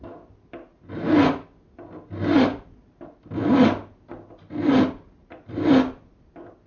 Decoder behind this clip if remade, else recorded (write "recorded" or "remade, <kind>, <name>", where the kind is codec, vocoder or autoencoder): recorded